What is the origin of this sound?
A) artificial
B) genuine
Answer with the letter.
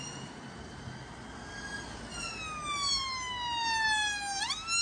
B